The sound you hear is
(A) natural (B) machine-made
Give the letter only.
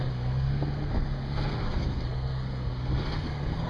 B